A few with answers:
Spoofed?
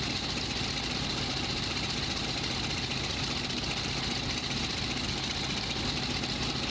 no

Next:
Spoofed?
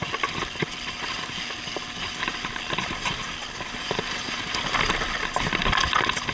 no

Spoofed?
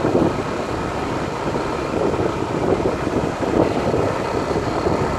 no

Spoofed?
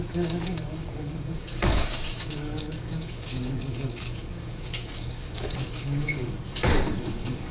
yes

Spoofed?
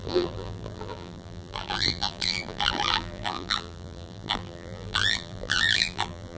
yes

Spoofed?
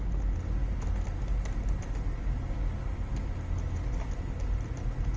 no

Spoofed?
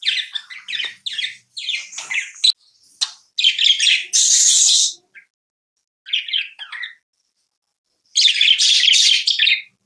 no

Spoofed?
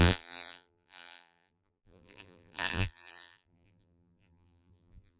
yes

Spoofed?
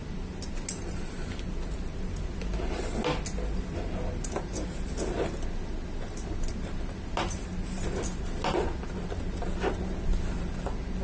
no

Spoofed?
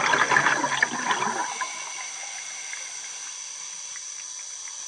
no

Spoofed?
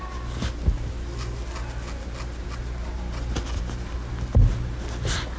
no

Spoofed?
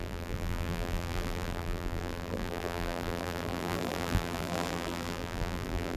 yes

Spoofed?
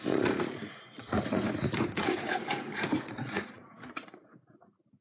yes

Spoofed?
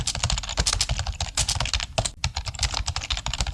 no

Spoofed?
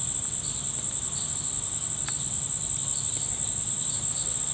no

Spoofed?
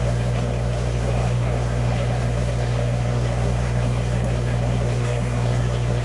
yes